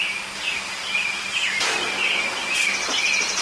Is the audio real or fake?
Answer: real